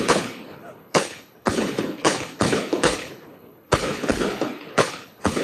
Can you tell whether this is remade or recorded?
remade